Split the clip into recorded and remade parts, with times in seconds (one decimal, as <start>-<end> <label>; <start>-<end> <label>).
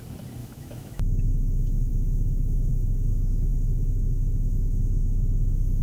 0.0-0.4 recorded; 0.4-1.3 remade; 1.3-5.8 recorded